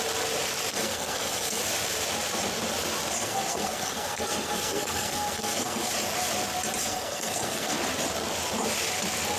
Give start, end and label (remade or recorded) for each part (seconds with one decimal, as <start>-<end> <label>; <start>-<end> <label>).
0.0-0.7 recorded; 0.7-1.6 remade; 1.6-3.2 recorded; 3.2-5.9 remade; 5.9-6.8 recorded; 6.8-7.8 remade; 7.8-9.4 recorded